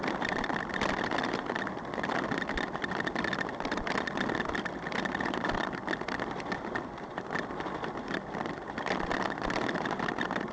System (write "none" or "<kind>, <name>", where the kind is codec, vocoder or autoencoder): vocoder, BigVGAN v2